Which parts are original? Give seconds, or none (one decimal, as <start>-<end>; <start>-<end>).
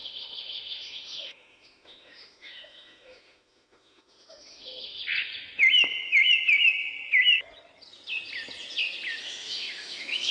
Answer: 5.0-9.2